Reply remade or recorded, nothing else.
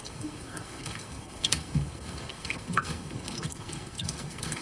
remade